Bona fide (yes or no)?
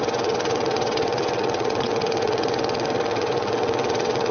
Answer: no